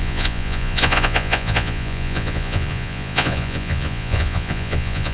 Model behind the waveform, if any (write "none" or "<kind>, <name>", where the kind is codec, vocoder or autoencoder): vocoder, Vocos